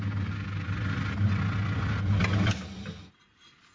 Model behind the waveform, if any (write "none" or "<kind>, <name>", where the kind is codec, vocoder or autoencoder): none